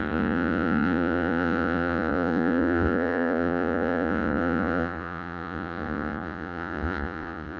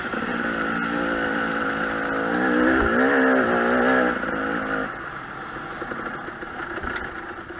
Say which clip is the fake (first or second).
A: first